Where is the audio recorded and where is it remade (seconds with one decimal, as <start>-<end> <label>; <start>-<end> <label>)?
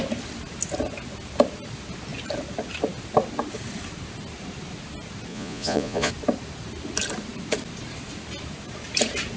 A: 0.0-5.3 recorded; 5.3-6.1 remade; 6.1-9.4 recorded